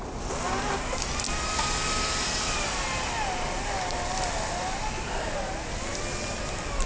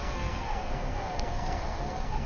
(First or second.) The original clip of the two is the first